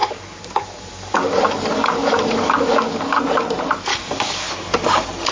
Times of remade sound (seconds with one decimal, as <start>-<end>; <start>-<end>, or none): 0.0-3.2; 3.9-4.5